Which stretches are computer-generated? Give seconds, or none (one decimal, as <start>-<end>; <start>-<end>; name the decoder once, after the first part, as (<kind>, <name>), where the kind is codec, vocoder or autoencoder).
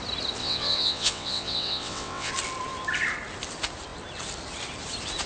0.4-2.3 (vocoder, WaveNeXt)